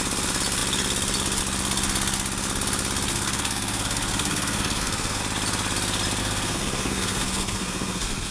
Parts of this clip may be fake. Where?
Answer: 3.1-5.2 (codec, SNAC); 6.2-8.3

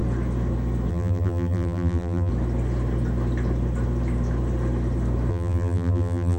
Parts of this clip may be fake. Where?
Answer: 0.9-2.3 (vocoder, BigVGAN v2); 5.3-6.4

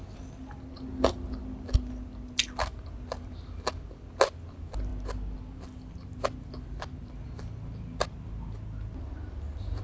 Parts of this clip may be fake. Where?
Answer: none

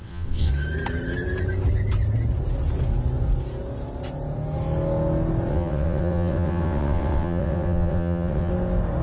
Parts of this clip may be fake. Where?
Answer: 0.0-0.5 (vocoder, WaveNeXt); 5.5-8.5